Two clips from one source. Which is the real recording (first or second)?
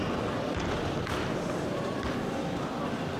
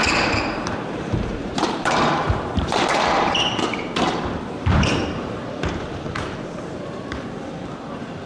first